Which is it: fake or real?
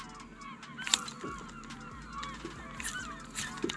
real